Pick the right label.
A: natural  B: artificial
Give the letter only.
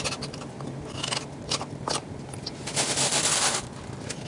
A